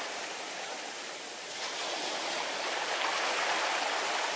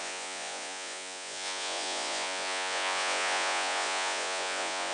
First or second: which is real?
first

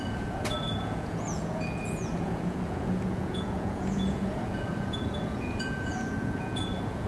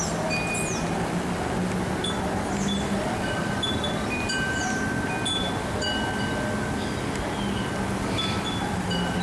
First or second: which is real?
second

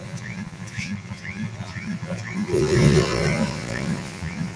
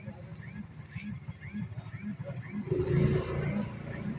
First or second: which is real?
second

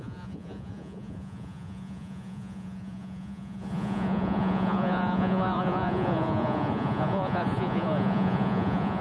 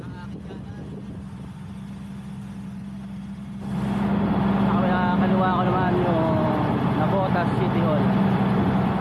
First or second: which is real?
second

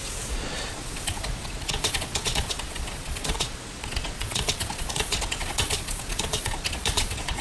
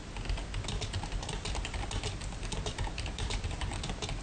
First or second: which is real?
second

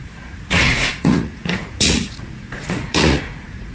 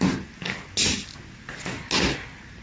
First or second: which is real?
second